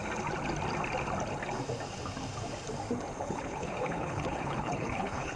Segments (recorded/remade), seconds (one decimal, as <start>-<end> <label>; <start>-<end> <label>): 0.0-3.2 recorded; 3.2-5.4 remade